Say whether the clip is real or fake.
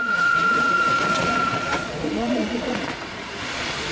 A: fake